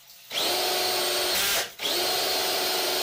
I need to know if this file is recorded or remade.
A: recorded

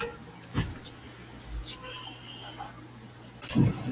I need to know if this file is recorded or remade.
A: recorded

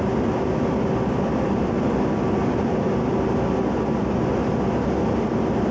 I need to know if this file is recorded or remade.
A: recorded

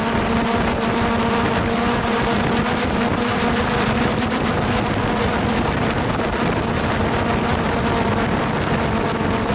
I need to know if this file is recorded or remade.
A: recorded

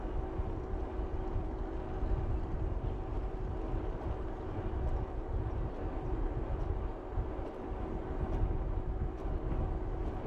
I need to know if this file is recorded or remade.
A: recorded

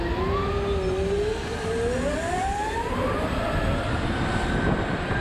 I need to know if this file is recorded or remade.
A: recorded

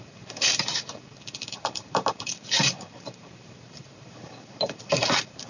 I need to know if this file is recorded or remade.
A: remade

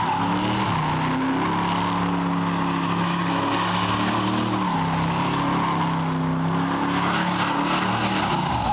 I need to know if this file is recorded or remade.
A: recorded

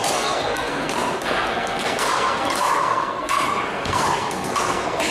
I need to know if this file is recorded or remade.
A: remade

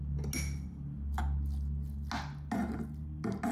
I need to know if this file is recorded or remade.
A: recorded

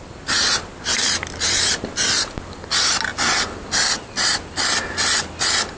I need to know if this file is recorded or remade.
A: recorded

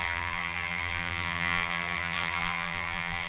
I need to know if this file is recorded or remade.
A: remade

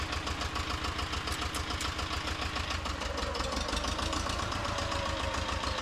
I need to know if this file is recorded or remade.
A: recorded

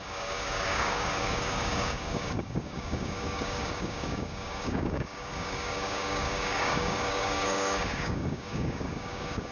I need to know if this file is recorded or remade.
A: remade